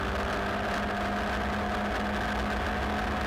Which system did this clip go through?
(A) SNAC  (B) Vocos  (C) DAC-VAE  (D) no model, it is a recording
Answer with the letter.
D